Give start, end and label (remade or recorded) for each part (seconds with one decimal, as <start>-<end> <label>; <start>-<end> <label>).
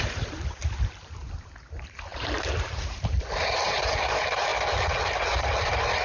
0.0-4.5 remade; 4.5-5.1 recorded; 5.1-6.0 remade